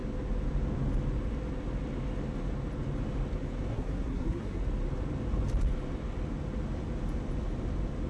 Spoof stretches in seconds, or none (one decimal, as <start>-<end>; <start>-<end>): 3.7-4.6

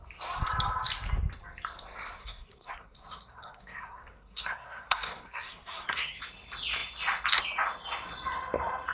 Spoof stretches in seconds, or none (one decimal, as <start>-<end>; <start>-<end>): 2.2-6.2

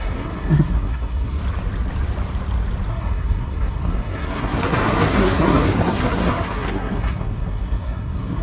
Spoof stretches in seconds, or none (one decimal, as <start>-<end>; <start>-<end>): 0.0-1.4; 2.9-8.4

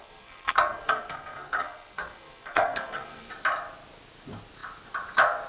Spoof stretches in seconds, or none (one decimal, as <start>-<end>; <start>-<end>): 0.0-3.3